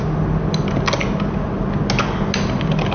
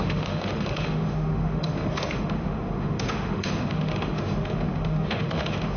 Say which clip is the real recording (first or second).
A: first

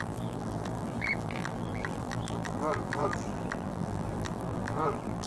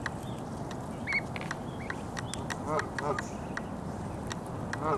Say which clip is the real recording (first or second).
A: second